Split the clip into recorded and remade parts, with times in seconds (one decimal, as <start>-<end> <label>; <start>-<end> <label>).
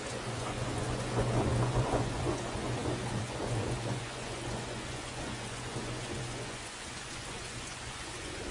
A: 0.0-8.5 remade